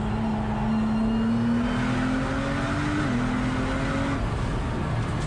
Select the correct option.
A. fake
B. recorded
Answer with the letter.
B